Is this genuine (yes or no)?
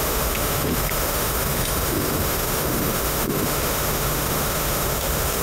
no